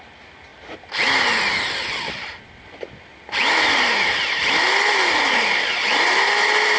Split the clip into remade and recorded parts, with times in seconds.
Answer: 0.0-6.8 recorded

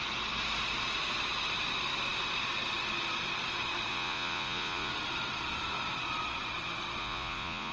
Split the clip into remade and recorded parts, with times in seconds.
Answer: 0.0-3.9 recorded; 3.9-4.9 remade; 4.9-7.0 recorded; 7.0-7.7 remade

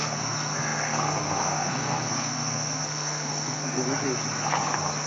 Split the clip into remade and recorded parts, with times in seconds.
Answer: 0.0-3.8 remade; 3.8-5.1 recorded

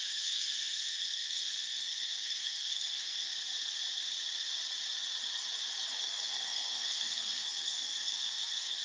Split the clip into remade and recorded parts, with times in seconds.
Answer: 0.0-3.3 remade; 3.3-6.0 recorded; 6.0-8.8 remade

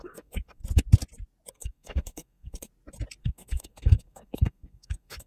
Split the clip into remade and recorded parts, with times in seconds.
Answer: 0.0-0.6 remade; 0.6-1.5 recorded; 1.5-2.7 remade; 2.7-3.2 recorded; 3.2-5.3 remade